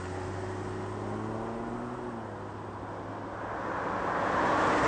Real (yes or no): yes